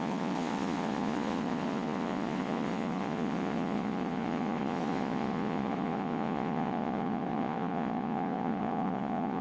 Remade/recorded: remade